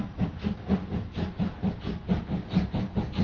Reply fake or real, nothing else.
real